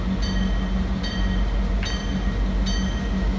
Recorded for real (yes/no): yes